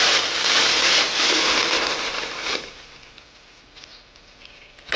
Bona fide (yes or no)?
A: no